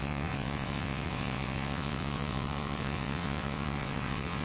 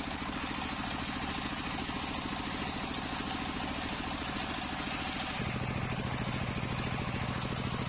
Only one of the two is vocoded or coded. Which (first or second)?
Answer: first